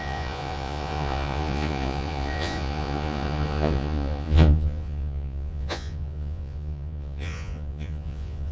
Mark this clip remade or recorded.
remade